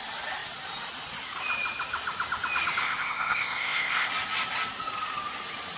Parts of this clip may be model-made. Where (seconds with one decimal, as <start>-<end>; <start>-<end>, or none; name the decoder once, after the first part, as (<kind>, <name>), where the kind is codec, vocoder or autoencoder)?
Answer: 2.8-4.1 (codec, ZipCodec)